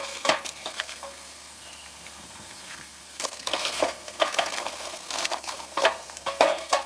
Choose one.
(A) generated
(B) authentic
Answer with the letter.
A